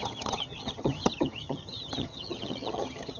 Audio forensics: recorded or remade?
remade